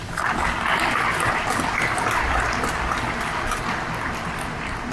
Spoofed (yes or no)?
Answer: no